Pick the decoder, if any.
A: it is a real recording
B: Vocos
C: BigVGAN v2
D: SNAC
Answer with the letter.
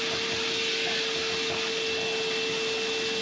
A